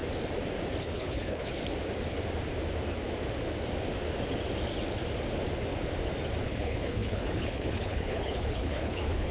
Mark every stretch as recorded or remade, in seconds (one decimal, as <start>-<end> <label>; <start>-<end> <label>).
0.0-0.8 recorded; 0.8-1.6 remade; 1.6-6.4 recorded; 6.4-9.3 remade